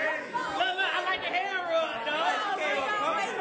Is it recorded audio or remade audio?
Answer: recorded